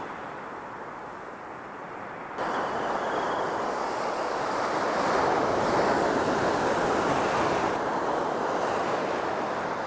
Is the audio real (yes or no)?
yes